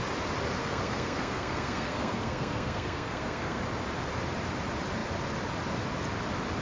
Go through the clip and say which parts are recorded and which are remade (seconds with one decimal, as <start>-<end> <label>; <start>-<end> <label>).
0.0-0.6 recorded; 0.6-3.6 remade; 3.6-6.6 recorded